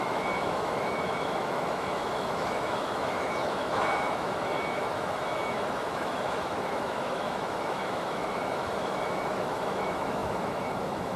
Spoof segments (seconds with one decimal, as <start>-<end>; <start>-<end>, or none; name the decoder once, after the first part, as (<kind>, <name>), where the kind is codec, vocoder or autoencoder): 0.0-11.2 (autoencoder, DAC-VAE)